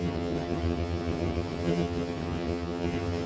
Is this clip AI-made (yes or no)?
yes